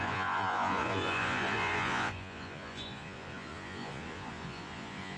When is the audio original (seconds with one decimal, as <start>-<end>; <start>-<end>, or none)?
none